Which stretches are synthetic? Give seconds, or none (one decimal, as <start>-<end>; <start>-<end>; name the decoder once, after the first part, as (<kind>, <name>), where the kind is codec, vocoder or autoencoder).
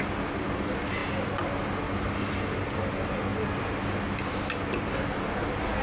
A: none